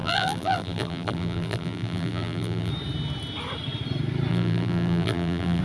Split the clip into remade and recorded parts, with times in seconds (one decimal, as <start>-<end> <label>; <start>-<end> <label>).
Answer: 0.0-2.7 remade; 2.7-4.3 recorded; 4.3-5.6 remade